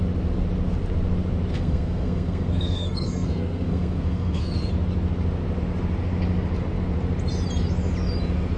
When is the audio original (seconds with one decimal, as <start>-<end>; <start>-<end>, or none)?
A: 0.0-1.5; 4.7-8.6